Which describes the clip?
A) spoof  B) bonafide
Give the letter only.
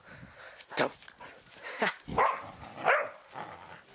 B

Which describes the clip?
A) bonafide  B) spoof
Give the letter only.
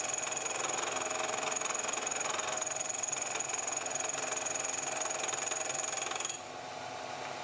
A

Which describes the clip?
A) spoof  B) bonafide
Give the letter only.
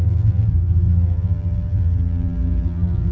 A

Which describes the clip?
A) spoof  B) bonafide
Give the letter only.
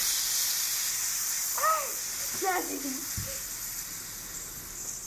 B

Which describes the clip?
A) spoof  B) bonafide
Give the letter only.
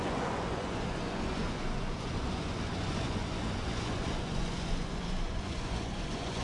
A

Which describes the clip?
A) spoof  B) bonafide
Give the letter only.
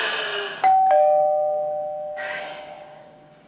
A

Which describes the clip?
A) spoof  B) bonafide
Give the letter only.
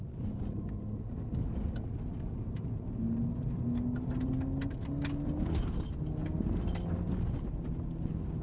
B